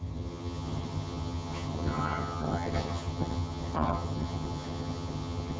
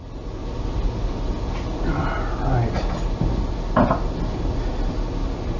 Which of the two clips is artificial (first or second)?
first